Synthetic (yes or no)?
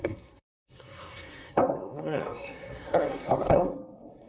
yes